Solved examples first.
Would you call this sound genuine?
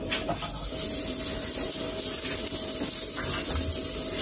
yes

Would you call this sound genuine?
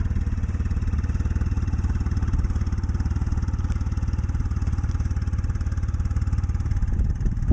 yes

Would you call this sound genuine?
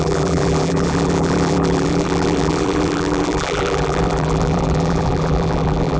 no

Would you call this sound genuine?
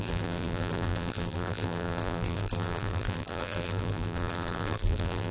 no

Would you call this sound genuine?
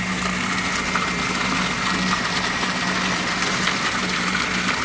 yes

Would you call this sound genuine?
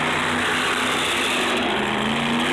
yes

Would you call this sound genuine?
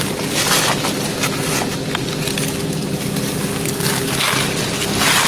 yes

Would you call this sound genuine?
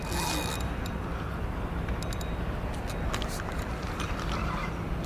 yes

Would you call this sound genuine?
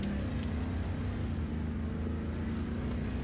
yes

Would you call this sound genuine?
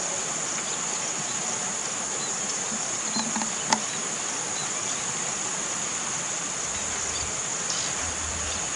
yes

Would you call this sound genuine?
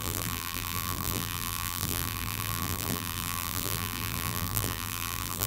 no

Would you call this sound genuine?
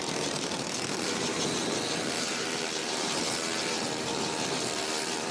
no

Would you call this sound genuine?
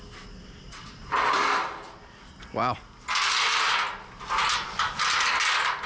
yes